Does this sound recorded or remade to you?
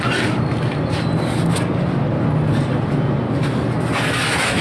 recorded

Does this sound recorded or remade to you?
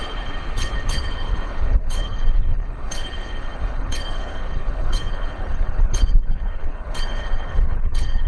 remade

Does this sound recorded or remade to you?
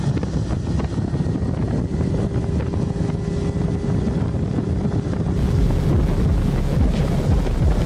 recorded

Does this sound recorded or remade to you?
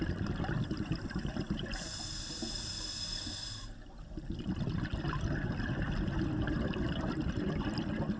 recorded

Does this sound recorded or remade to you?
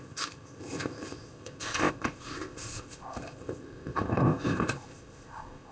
remade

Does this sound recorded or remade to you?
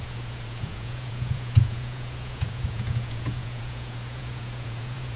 remade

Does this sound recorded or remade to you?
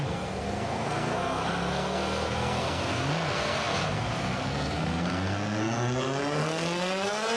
remade